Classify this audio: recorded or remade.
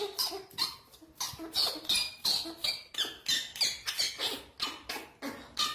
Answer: recorded